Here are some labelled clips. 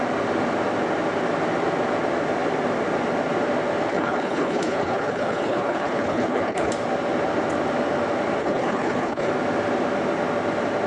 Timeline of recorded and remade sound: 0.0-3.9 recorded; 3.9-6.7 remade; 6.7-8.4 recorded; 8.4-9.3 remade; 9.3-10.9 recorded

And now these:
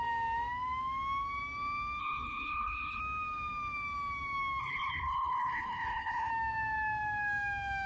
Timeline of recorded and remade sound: 0.0-2.0 recorded; 2.0-3.0 remade; 3.0-4.6 recorded; 4.6-6.3 remade; 6.3-7.9 recorded

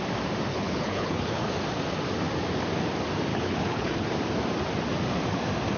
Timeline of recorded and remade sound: 0.0-0.5 recorded; 0.5-1.5 remade; 1.5-3.3 recorded; 3.3-4.1 remade; 4.1-5.8 recorded

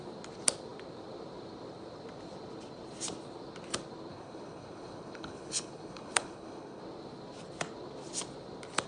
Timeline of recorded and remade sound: 0.0-4.1 recorded; 4.1-6.8 remade; 6.8-8.9 recorded

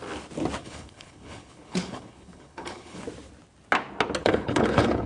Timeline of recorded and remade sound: 0.0-0.6 recorded; 0.6-3.0 remade; 3.0-4.2 recorded; 4.2-5.1 remade

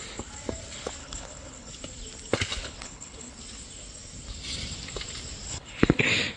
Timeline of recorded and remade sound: 0.0-1.0 recorded; 1.0-1.7 remade; 1.7-2.6 recorded; 2.6-3.4 remade; 3.4-5.5 recorded; 5.5-6.0 remade; 6.0-6.4 recorded

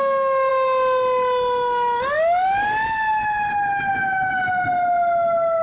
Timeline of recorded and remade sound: 0.0-5.6 recorded